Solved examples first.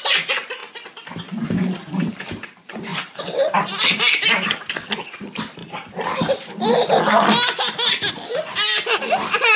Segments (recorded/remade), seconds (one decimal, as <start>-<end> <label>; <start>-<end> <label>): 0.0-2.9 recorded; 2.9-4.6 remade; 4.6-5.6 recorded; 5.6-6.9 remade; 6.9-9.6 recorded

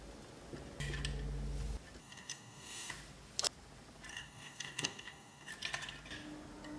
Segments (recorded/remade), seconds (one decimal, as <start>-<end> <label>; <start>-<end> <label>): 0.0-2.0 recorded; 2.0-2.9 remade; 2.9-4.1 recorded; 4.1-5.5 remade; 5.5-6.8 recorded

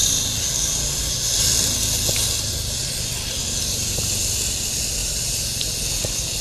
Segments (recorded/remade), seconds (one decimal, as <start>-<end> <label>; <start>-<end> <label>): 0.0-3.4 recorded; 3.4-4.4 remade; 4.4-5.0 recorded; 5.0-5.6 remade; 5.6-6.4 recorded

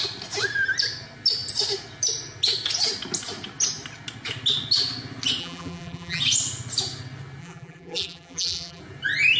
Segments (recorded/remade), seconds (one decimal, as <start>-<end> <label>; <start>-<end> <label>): 0.0-5.4 recorded; 5.4-6.2 remade; 6.2-7.4 recorded; 7.4-8.8 remade; 8.8-9.4 recorded